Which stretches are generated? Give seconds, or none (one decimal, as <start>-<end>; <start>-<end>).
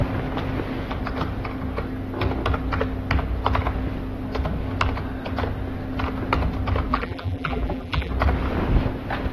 6.9-8.1